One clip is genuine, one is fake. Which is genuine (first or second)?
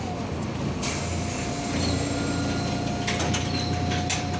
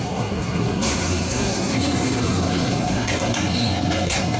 first